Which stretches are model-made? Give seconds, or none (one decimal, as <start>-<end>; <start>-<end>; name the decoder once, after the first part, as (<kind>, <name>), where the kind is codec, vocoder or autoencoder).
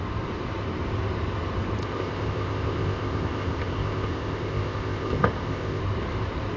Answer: 1.8-5.8 (codec, ZipCodec)